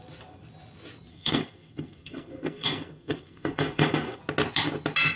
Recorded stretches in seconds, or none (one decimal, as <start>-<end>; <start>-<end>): 0.0-1.1; 4.2-5.2

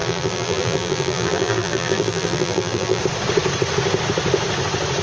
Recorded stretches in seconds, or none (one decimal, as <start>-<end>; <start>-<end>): 3.0-5.0

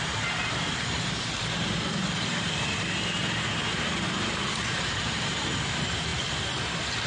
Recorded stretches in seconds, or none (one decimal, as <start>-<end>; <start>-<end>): 6.1-7.1

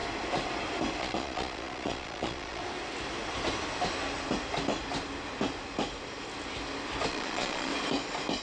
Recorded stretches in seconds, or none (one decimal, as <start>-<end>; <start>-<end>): 0.0-1.0; 2.6-7.1; 7.7-8.4

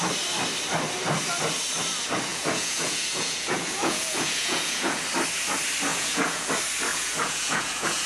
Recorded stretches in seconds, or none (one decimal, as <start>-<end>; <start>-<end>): 0.0-2.3; 5.0-5.9; 6.5-6.9

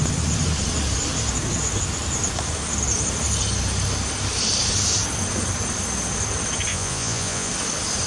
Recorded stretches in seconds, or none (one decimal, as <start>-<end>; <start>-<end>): 0.0-6.7; 7.5-8.1

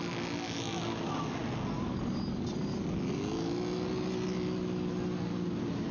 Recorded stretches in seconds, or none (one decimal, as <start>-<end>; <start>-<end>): 0.0-5.9

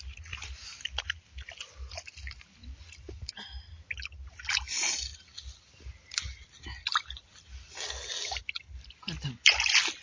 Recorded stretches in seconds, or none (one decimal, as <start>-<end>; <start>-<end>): 0.0-2.1; 3.4-10.0